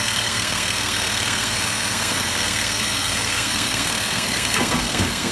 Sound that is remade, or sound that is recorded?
remade